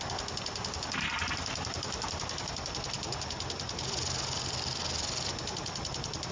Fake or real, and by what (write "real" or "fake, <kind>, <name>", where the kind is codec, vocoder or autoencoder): real